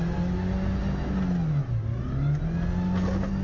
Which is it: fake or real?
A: real